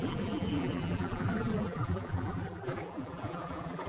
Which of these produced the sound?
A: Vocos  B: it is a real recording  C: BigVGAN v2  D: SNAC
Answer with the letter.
C